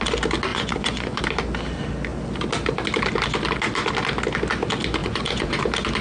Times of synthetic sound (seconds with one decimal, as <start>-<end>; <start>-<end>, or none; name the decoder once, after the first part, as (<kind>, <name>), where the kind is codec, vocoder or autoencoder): 0.5-1.2 (vocoder, Vocos); 5.0-5.6

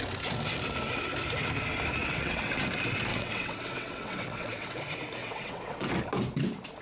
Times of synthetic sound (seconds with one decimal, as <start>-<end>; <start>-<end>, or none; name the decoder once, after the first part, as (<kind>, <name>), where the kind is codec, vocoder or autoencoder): 2.0-2.6 (vocoder, WaveNeXt); 3.1-4.8; 5.2-5.9

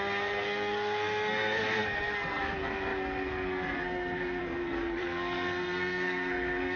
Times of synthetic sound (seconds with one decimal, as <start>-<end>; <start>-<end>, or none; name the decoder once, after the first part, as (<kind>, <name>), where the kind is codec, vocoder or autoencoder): 0.0-6.8 (codec, SNAC)

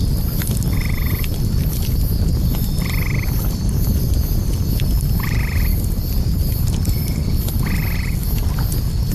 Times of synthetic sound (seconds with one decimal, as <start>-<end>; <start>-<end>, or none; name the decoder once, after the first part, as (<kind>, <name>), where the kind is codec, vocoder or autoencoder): none

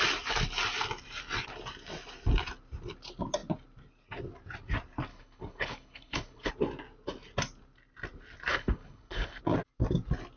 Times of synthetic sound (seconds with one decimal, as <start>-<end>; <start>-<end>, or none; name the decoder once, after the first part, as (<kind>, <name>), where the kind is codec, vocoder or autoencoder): 5.1-6.5 (codec, HILCodec); 8.5-9.4

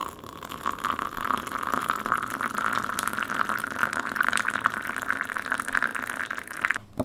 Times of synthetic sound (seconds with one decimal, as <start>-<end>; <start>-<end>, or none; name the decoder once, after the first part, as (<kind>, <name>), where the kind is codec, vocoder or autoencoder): 3.8-4.5 (vocoder, BigVGAN v2)

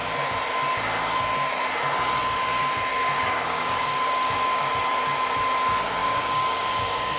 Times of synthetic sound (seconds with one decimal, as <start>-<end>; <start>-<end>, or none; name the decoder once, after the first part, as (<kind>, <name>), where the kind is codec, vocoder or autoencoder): 2.9-4.7 (codec, DAC); 6.0-7.2